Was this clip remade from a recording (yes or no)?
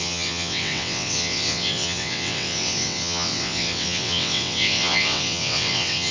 yes